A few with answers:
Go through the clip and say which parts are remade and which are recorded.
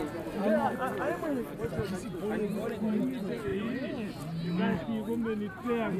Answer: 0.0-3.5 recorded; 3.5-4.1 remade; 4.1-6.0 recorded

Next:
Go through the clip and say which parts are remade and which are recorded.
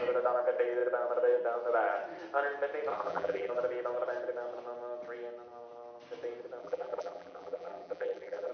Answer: 0.0-2.9 recorded; 2.9-3.5 remade; 3.5-6.6 recorded; 6.6-8.5 remade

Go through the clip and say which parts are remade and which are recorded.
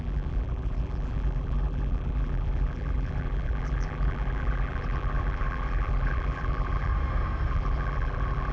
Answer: 0.0-6.9 remade; 6.9-7.5 recorded; 7.5-8.5 remade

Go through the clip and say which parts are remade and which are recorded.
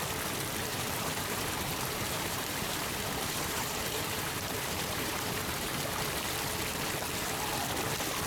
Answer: 0.0-0.7 recorded; 0.7-5.7 remade; 5.7-8.3 recorded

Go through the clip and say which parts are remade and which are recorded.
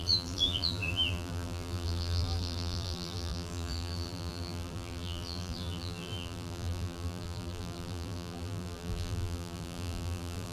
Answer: 0.0-10.5 remade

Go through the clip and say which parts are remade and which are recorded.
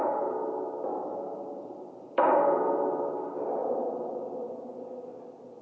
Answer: 0.0-0.9 recorded; 0.9-2.4 remade; 2.4-3.6 recorded; 3.6-4.2 remade; 4.2-5.6 recorded